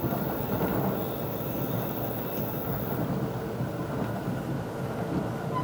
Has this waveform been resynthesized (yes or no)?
no